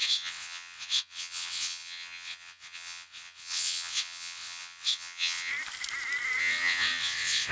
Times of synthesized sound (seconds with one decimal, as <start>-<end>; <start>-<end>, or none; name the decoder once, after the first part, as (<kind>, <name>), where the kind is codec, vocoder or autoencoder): 0.0-5.5 (vocoder, WaveNeXt); 6.4-7.5